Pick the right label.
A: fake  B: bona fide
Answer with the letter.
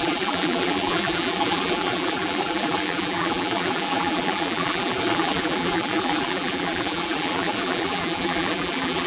A